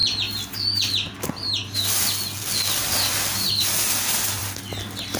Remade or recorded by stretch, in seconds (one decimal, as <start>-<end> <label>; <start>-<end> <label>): 0.0-5.2 recorded